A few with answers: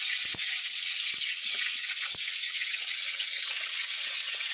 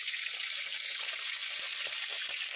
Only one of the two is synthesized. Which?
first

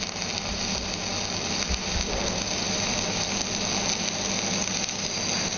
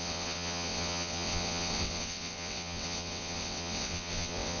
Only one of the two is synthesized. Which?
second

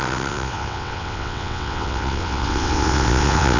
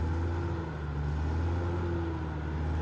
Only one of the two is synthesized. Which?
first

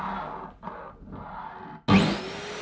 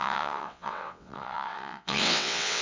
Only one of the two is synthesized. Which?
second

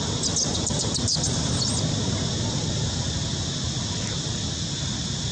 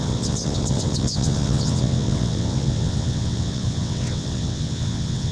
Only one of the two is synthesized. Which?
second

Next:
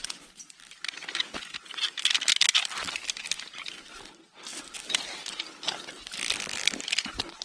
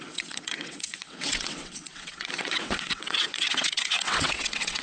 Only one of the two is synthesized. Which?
second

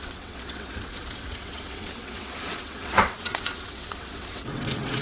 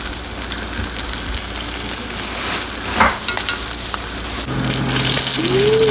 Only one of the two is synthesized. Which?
first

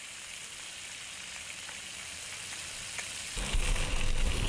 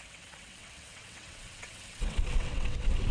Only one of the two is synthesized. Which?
second